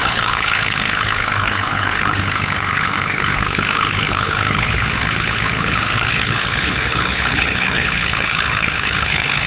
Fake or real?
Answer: fake